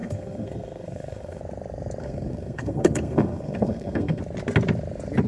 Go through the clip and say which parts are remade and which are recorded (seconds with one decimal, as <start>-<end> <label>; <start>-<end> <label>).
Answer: 0.0-1.4 remade; 1.4-2.0 recorded; 2.0-4.2 remade; 4.2-5.3 recorded